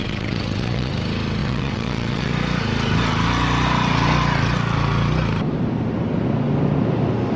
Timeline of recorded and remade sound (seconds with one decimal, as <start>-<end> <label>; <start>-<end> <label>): 0.0-0.9 remade; 0.9-1.4 recorded; 1.4-2.3 remade; 2.3-7.4 recorded